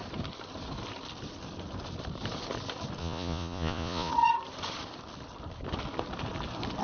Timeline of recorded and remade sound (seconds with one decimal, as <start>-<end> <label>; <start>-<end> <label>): 0.0-3.0 recorded; 3.0-4.1 remade; 4.1-6.8 recorded